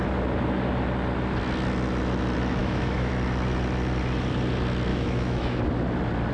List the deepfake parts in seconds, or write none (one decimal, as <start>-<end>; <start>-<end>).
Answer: 2.6-3.1; 4.9-5.6